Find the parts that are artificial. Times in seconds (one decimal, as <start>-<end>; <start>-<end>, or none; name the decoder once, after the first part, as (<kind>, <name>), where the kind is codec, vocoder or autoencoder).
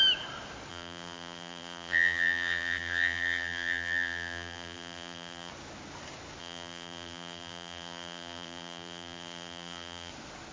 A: 0.7-5.5 (vocoder, BigVGAN v2); 6.4-10.1